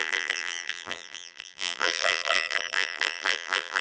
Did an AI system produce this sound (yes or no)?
yes